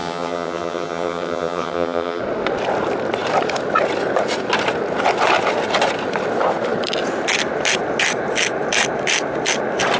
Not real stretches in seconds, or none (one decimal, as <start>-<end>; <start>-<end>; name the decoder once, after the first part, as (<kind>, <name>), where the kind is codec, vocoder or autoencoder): 0.0-2.2 (vocoder, HiFi-GAN)